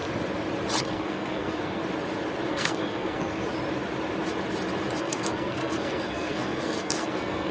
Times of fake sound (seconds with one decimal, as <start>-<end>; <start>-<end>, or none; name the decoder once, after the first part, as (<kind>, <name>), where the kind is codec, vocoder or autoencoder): 0.8-1.8 (codec, SNAC); 2.5-3.4; 5.0-7.5